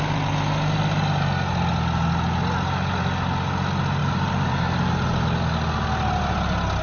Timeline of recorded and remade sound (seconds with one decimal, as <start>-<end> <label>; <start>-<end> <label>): 0.0-4.0 recorded; 4.0-5.4 remade; 5.4-6.8 recorded